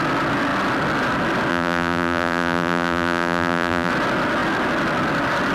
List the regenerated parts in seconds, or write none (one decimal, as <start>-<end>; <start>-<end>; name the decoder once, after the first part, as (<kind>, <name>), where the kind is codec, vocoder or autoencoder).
1.5-3.9 (vocoder, BigVGAN v2)